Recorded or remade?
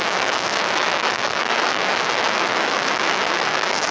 remade